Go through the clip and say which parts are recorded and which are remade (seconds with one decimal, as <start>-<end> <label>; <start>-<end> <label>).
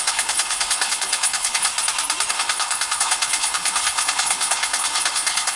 0.0-1.7 remade; 1.7-2.3 recorded; 2.3-5.6 remade